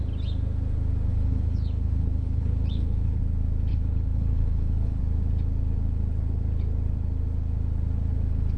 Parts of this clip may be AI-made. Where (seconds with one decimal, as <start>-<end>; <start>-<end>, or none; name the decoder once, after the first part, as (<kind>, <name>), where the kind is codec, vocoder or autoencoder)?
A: 1.1-3.2 (codec, HILCodec); 3.7-5.0